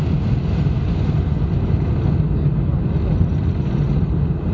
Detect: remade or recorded recorded